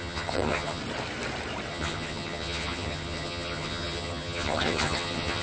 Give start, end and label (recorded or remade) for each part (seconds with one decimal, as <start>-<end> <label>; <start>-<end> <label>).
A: 0.0-0.8 remade; 0.8-1.7 recorded; 1.7-5.4 remade

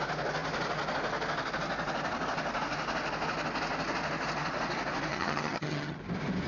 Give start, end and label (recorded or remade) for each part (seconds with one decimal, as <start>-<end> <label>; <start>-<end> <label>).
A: 0.0-5.1 recorded; 5.1-6.0 remade; 6.0-6.5 recorded

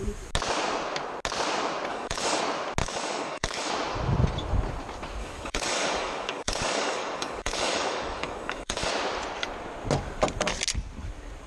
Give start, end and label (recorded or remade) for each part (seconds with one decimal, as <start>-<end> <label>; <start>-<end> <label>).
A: 0.0-1.9 recorded; 1.9-2.4 remade; 2.4-2.8 recorded; 2.8-3.7 remade; 3.7-5.2 recorded; 5.2-8.9 remade; 8.9-11.5 recorded

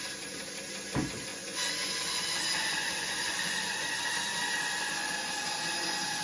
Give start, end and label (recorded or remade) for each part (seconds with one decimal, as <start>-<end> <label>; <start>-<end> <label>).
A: 0.0-1.3 recorded; 1.3-4.0 remade; 4.0-4.4 recorded; 4.4-6.2 remade

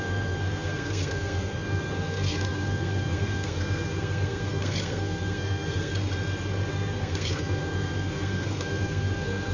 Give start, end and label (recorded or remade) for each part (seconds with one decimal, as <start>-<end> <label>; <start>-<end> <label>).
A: 0.0-5.9 remade; 5.9-6.7 recorded; 6.7-9.5 remade

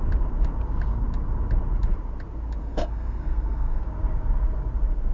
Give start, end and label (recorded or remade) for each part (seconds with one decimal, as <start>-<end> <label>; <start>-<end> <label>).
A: 0.0-2.6 recorded; 2.6-3.8 remade; 3.8-5.1 recorded

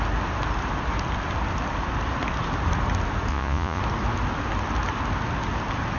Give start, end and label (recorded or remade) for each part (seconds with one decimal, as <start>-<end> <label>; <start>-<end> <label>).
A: 0.0-3.3 recorded; 3.3-3.8 remade; 3.8-6.0 recorded

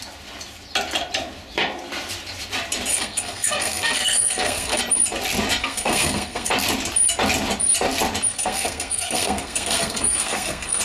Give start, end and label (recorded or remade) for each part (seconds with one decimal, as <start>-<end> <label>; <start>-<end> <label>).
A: 0.0-2.9 recorded; 2.9-4.8 remade; 4.8-5.6 recorded; 5.6-6.5 remade; 6.5-8.3 recorded; 8.3-10.8 remade